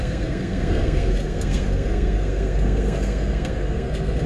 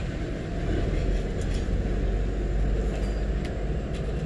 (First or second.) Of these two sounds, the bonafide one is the second